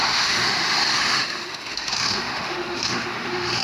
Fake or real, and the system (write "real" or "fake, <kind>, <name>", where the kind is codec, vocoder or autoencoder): fake, autoencoder, DAC-VAE